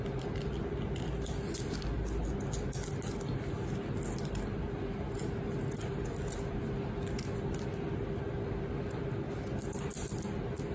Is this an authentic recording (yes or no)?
yes